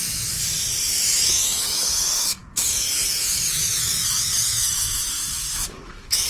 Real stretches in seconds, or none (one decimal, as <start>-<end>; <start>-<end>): 0.4-1.3